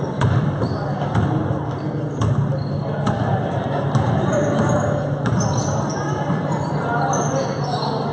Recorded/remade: recorded